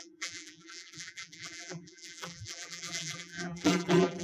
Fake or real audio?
fake